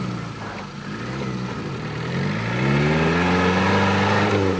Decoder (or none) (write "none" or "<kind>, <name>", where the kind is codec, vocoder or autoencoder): none